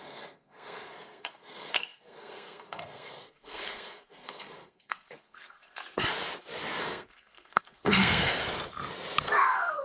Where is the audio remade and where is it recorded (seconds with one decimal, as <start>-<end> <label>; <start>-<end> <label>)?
0.0-5.8 remade; 5.8-6.8 recorded; 6.8-8.4 remade; 8.4-9.2 recorded; 9.2-9.8 remade